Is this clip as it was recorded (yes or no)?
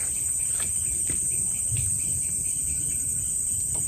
no